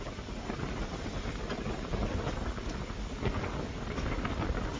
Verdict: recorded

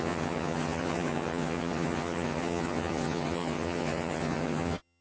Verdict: remade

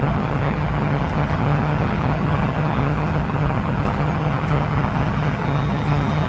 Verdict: remade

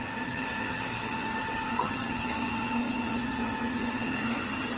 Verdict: remade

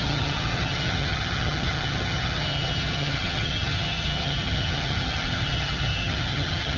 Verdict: remade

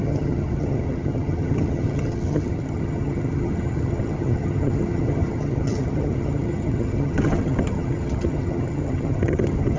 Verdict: remade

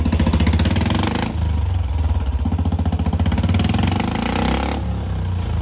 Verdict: recorded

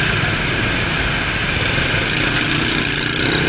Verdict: recorded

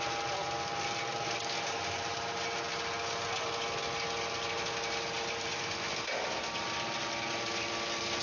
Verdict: recorded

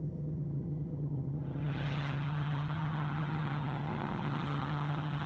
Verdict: remade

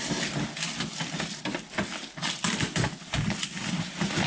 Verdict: recorded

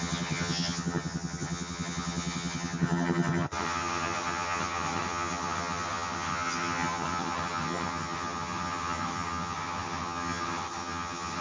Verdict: remade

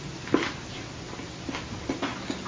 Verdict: recorded